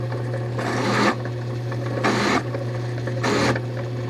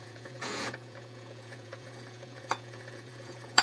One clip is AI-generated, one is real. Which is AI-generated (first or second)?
second